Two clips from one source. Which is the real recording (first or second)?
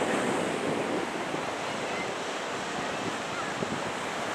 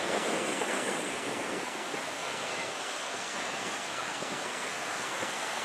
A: first